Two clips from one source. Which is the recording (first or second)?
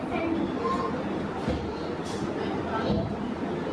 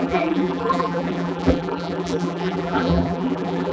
first